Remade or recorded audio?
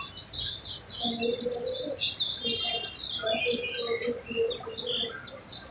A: recorded